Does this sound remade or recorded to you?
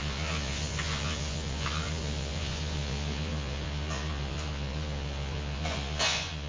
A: remade